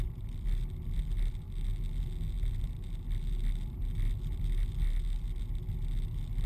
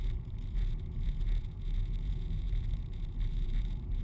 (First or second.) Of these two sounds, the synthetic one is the second